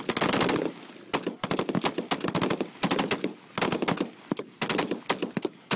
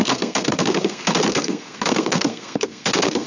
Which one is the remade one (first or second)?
second